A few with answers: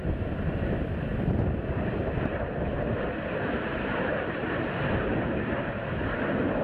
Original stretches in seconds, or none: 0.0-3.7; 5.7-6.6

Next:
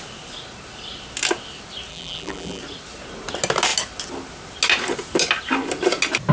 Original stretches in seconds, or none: 0.0-1.9; 2.6-6.3

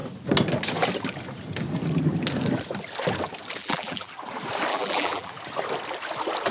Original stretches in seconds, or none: 0.0-3.6; 4.1-4.7; 5.3-6.5

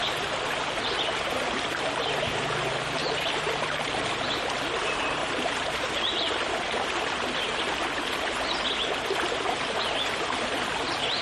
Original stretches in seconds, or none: 0.0-3.0; 4.4-5.2; 5.9-11.2

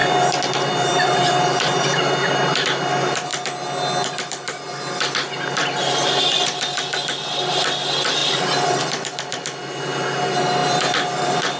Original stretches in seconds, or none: 2.3-8.2; 8.8-10.6